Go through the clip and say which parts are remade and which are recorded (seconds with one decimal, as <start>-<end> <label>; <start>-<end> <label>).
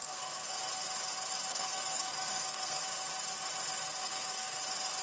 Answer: 0.0-0.6 remade; 0.6-1.5 recorded; 1.5-2.8 remade; 2.8-4.0 recorded; 4.0-4.6 remade; 4.6-5.0 recorded